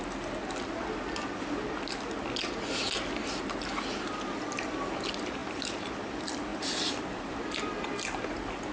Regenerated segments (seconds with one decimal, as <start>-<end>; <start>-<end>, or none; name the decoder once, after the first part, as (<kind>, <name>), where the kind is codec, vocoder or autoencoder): 5.4-5.9 (vocoder, BigVGAN v2); 6.5-7.4